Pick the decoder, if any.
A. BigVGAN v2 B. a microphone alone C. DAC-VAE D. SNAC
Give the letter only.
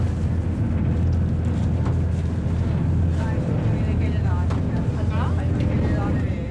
B